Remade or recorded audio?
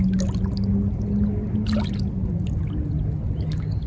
recorded